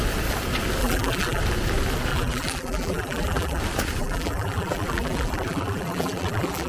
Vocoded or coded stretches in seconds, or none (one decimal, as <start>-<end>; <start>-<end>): 0.8-1.4; 2.1-3.6; 4.0-6.7